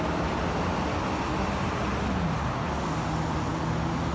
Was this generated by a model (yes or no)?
no